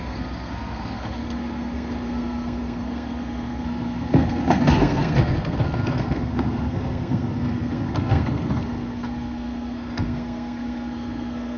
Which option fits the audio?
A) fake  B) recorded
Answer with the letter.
A